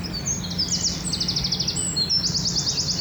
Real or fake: real